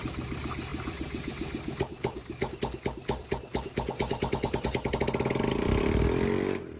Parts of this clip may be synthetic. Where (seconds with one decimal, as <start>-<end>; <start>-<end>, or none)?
none